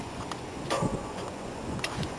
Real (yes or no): no